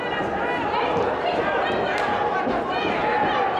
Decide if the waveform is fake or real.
real